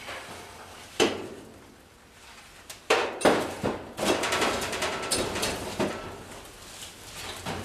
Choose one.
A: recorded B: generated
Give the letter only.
B